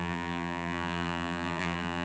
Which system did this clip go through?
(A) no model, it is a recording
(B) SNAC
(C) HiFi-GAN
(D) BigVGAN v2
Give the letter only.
D